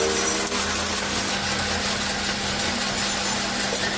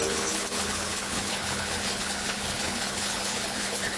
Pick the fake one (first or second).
second